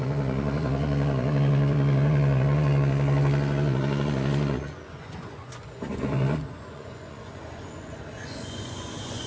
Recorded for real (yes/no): no